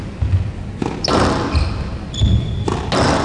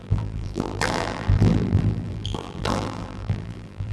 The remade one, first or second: second